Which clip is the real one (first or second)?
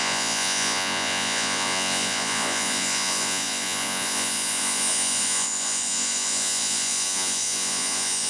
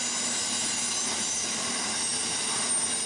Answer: second